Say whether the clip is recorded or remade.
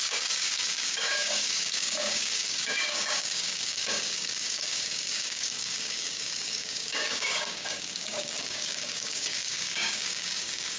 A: remade